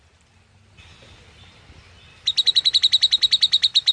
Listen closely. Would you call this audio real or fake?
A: real